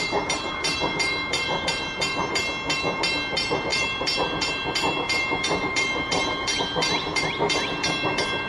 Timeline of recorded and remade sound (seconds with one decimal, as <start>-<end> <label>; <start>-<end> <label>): 0.0-2.4 remade; 2.4-3.3 recorded; 3.3-8.5 remade